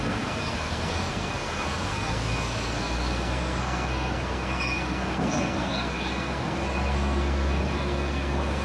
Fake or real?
fake